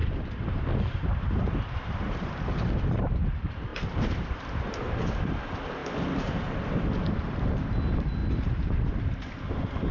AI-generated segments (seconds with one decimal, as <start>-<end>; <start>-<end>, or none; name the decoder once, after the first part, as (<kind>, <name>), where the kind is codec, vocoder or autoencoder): 0.0-3.0 (vocoder, BigVGAN v2); 3.7-4.6; 8.2-8.9

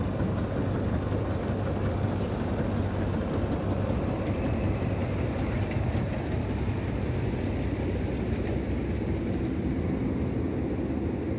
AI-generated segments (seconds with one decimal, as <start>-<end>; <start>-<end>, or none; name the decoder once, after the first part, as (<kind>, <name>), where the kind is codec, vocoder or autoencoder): none

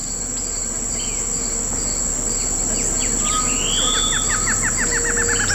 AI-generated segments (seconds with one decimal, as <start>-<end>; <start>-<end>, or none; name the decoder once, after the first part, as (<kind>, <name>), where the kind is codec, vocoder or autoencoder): none

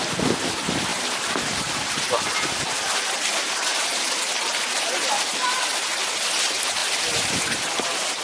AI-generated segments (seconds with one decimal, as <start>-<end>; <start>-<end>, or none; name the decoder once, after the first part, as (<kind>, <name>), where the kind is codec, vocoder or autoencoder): none